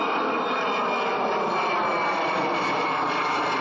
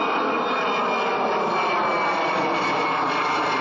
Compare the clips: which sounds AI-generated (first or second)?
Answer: first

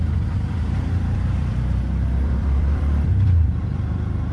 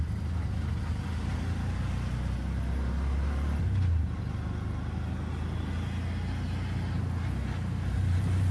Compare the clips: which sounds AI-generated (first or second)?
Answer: first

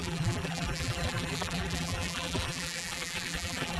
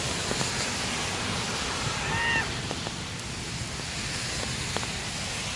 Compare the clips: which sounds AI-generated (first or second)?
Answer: first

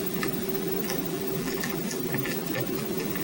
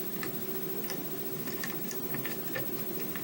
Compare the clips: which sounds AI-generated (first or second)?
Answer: first